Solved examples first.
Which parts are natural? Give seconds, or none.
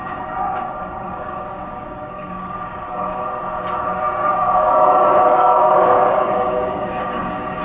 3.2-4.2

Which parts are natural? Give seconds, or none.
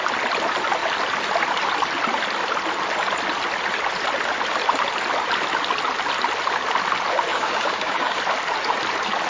0.0-7.3; 8.2-9.3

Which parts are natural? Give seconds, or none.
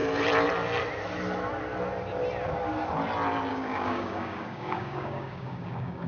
0.0-3.5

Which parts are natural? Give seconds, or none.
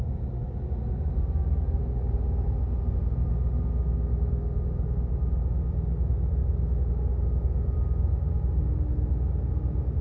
0.0-10.0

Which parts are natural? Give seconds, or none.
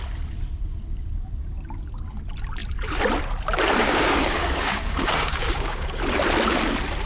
0.0-3.8; 6.0-7.1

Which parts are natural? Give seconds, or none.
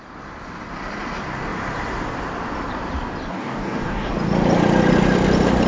0.0-3.3; 4.1-5.7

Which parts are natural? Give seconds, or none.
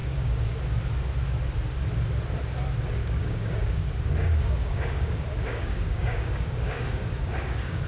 0.6-3.0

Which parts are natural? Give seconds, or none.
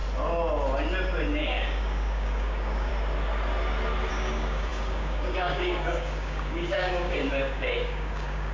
0.0-1.4; 2.9-4.1